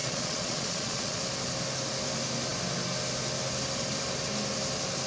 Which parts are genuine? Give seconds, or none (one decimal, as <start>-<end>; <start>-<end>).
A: 1.2-5.1